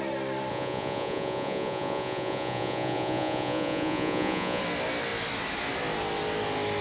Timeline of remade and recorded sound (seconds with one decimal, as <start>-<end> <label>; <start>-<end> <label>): 0.0-0.5 recorded; 0.5-4.6 remade; 4.6-6.8 recorded